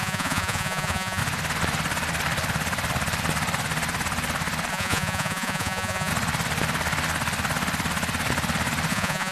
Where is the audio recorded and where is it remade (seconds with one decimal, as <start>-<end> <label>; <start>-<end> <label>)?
0.0-1.2 remade; 1.2-4.7 recorded; 4.7-6.1 remade; 6.1-8.9 recorded; 8.9-9.3 remade